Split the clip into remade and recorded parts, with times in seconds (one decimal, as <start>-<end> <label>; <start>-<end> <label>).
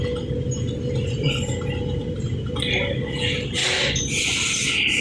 0.0-5.0 recorded